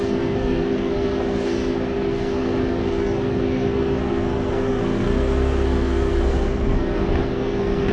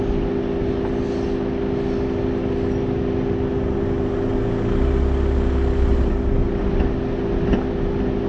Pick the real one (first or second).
second